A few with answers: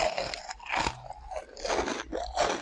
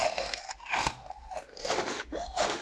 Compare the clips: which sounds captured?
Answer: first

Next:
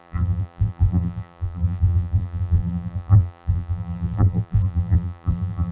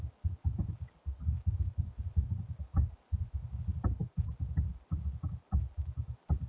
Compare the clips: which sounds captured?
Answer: second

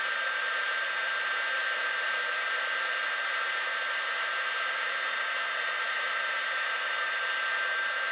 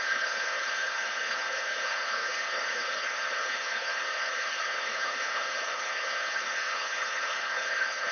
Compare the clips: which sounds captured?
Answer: first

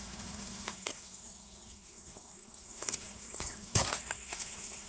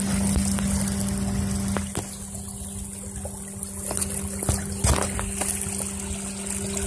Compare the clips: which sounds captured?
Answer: second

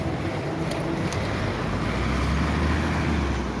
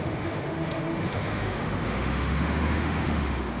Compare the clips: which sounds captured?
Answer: first